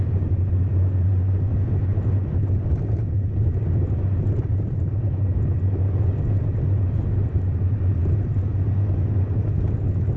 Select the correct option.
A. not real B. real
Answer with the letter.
B